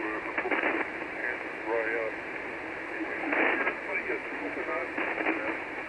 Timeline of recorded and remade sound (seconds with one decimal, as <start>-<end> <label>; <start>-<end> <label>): 0.0-5.9 recorded